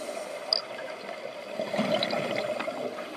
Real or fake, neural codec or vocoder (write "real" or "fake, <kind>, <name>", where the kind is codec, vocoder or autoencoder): real